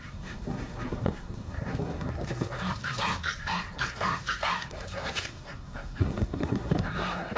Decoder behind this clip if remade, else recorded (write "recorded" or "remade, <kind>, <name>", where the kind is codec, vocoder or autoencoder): remade, codec, SNAC